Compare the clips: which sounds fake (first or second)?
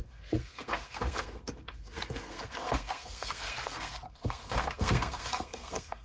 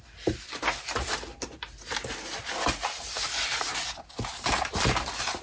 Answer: first